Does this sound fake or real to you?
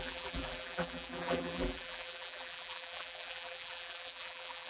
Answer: fake